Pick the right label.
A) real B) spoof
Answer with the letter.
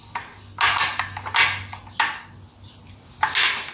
A